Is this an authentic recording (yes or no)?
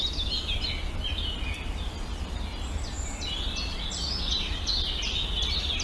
yes